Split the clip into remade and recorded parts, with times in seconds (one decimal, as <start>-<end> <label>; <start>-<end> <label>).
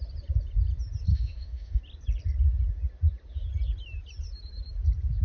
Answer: 0.0-1.1 recorded; 1.1-1.8 remade; 1.8-5.2 recorded